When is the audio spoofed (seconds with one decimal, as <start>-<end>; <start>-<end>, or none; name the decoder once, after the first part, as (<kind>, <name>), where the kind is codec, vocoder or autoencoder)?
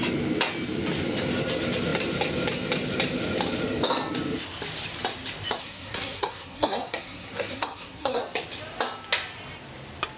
5.6-8.2 (codec, SNAC)